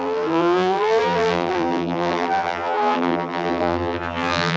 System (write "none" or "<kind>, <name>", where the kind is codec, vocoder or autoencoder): vocoder, BigVGAN v2